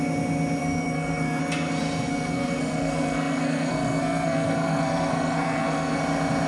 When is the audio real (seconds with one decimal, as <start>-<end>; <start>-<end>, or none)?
0.0-0.6; 1.4-2.1; 6.0-6.5